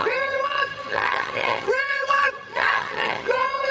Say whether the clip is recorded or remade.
remade